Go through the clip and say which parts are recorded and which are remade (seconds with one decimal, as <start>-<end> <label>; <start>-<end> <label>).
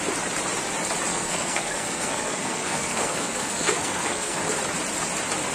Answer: 0.0-1.1 recorded; 1.1-4.4 remade; 4.4-5.5 recorded